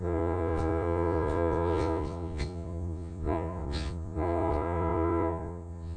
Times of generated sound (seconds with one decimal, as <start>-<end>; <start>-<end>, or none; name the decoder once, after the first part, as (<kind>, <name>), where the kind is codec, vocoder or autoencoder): 0.0-6.0 (vocoder, Vocos)